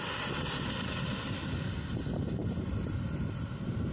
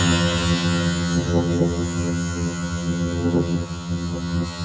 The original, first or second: first